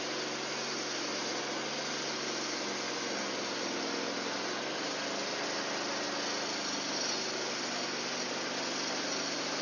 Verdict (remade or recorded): recorded